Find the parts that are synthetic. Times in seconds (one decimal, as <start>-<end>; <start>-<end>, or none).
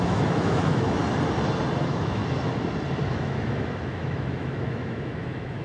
0.0-1.0; 1.8-2.2; 3.0-5.6